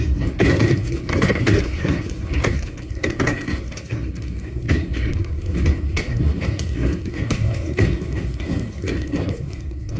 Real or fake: fake